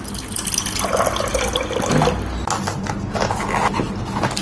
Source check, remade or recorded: recorded